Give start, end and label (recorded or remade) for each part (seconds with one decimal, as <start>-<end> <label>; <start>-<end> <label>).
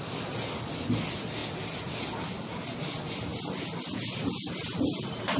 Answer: 0.0-5.4 recorded